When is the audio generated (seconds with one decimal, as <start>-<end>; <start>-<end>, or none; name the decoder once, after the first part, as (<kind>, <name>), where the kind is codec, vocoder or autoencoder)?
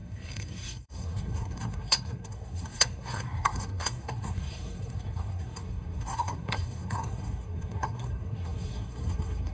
0.0-9.5 (codec, SNAC)